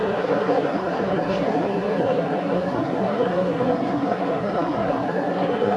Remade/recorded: remade